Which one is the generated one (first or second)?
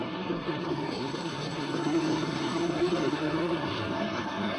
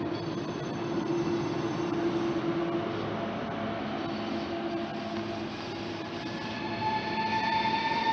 first